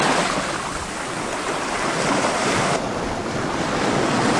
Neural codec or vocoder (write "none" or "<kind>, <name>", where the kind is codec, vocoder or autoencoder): none